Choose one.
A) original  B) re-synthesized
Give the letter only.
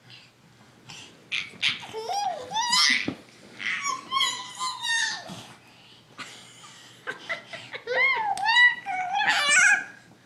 A